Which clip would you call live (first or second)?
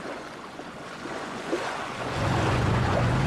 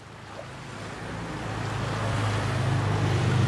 second